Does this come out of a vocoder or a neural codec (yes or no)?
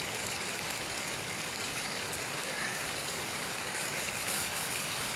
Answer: yes